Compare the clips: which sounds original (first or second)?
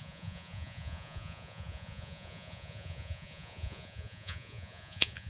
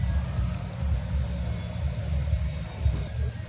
second